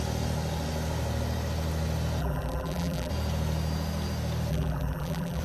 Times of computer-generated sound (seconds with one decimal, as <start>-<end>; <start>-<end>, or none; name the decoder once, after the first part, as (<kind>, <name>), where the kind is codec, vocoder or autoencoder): 2.2-3.1 (vocoder, BigVGAN v2); 4.5-5.4